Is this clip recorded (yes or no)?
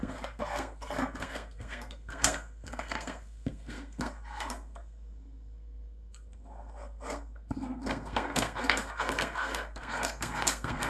no